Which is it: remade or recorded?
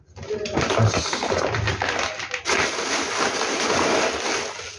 recorded